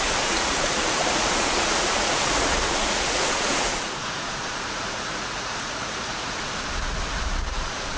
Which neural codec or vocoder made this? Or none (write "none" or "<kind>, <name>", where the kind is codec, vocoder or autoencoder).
vocoder, Vocos